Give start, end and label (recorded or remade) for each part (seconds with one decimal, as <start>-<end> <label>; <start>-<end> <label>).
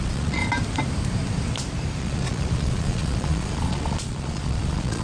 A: 0.0-0.4 remade; 0.4-2.0 recorded; 2.0-5.0 remade